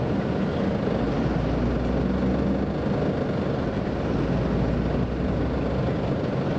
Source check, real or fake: real